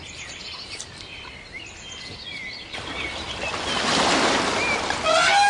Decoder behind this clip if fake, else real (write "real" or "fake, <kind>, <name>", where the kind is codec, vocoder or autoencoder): fake, vocoder, BigVGAN v2